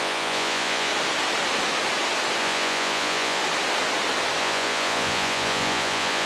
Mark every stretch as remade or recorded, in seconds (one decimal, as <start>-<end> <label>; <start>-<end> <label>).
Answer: 0.0-0.9 remade; 0.9-2.4 recorded; 2.4-3.4 remade; 3.4-4.4 recorded; 4.4-6.3 remade